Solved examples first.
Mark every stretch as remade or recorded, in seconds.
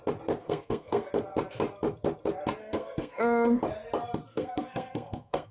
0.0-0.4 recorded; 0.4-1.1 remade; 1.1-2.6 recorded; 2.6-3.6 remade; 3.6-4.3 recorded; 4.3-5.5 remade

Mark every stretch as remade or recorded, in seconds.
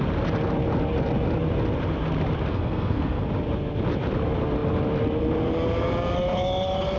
0.0-2.5 recorded; 2.5-3.2 remade; 3.2-7.0 recorded